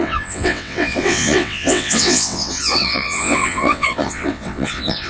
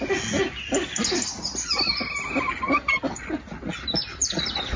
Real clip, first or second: second